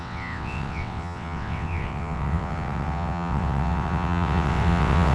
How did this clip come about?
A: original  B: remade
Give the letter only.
B